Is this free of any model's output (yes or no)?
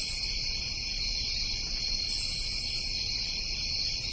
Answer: yes